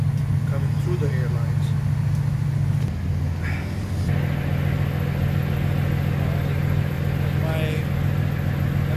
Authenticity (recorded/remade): recorded